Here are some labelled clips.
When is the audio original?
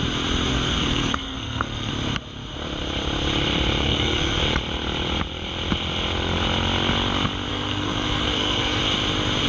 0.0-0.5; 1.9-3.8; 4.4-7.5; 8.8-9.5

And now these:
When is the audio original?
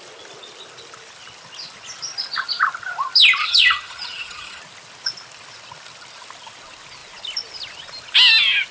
0.0-3.4; 4.6-8.7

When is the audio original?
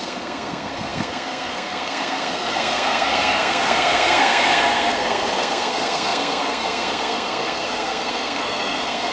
none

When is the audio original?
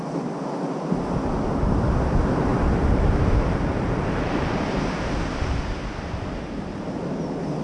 0.0-2.5; 7.0-7.6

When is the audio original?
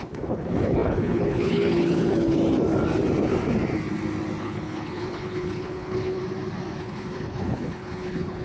2.4-4.4; 6.2-6.8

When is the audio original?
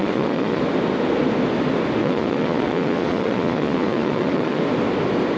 0.6-2.0; 4.6-5.4